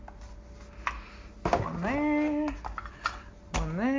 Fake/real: real